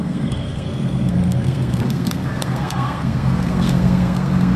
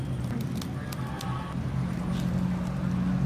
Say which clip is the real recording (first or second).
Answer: second